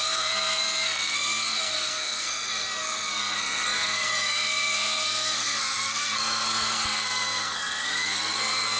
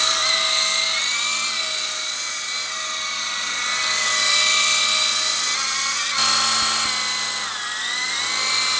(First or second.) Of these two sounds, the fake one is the first